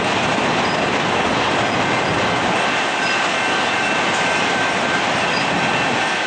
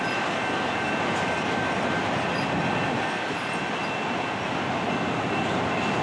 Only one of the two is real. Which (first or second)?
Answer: second